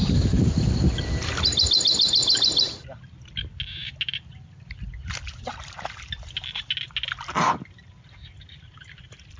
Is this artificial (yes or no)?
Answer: no